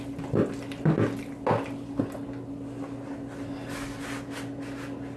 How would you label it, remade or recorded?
recorded